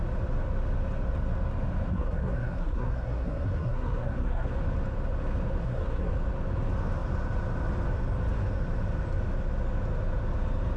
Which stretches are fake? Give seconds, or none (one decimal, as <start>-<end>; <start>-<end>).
1.9-4.5; 5.6-6.1